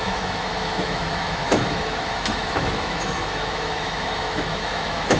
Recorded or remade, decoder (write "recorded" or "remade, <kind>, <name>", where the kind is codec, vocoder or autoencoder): remade, autoencoder, DAC-VAE